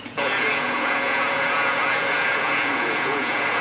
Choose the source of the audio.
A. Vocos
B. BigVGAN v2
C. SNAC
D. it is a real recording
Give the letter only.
A